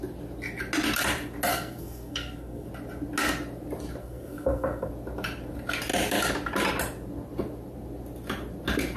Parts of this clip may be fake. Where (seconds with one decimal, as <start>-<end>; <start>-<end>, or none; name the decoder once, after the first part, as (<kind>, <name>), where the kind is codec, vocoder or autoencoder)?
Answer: 1.5-2.7 (codec, SNAC); 4.0-4.9